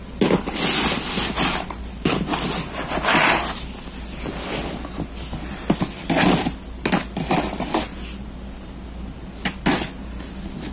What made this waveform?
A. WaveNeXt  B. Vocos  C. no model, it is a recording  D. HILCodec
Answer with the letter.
C